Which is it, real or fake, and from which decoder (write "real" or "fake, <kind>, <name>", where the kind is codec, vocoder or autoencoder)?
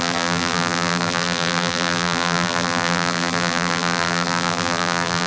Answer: fake, vocoder, BigVGAN v2